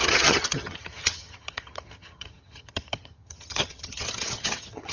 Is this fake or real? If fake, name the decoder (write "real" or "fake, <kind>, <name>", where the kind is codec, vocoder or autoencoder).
fake, vocoder, HiFi-GAN